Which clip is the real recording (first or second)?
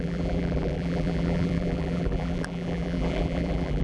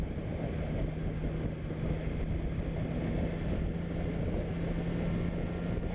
second